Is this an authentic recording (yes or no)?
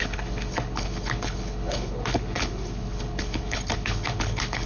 no